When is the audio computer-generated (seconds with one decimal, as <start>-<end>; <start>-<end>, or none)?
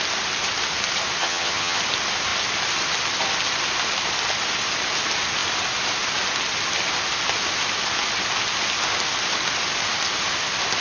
1.2-1.8